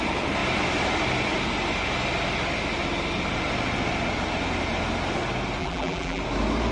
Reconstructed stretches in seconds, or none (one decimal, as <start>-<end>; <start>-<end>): 5.6-6.2